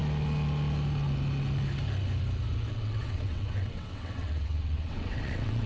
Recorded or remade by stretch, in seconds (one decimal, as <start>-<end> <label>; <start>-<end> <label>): 0.0-2.7 recorded; 2.7-5.7 remade